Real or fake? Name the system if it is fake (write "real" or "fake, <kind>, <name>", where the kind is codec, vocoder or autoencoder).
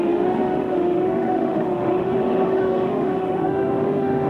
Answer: fake, autoencoder, DAC-VAE